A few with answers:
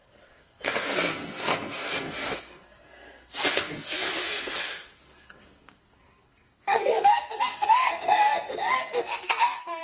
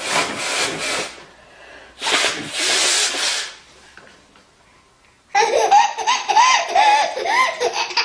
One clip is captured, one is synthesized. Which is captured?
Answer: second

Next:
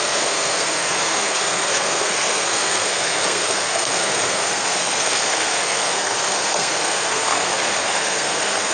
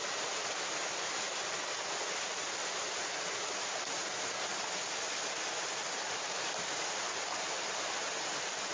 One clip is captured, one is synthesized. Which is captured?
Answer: second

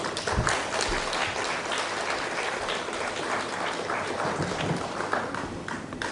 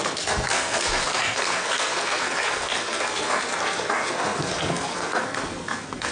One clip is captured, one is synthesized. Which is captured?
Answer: first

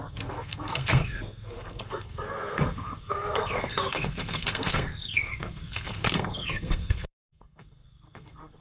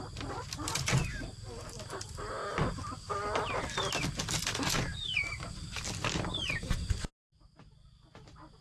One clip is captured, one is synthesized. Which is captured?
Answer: second